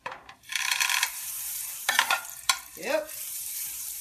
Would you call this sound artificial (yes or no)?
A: yes